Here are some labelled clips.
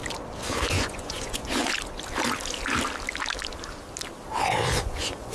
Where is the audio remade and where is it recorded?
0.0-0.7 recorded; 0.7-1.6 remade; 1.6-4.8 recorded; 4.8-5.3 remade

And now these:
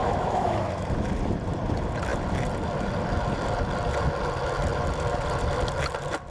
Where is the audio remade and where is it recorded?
0.0-0.7 remade; 0.7-6.3 recorded

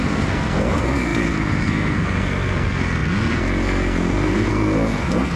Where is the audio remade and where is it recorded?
0.0-5.4 remade